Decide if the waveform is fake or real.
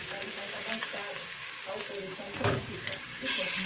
fake